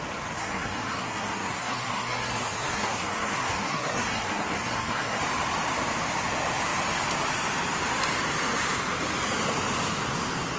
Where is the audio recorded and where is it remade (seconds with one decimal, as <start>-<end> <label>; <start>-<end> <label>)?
0.0-0.4 recorded; 0.4-5.2 remade; 5.2-10.6 recorded